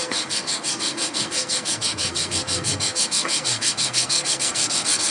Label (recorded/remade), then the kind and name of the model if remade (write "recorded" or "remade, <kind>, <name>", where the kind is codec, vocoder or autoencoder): remade, codec, SNAC